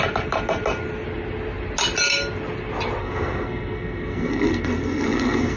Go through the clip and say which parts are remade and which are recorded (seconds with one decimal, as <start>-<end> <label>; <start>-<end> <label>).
0.0-3.0 recorded; 3.0-5.6 remade